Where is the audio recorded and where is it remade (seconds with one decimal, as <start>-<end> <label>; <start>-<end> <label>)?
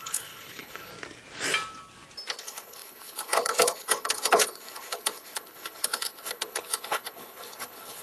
0.0-0.9 remade; 0.9-2.4 recorded; 2.4-8.0 remade